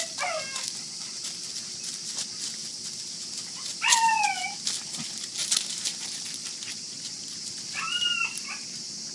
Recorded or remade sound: recorded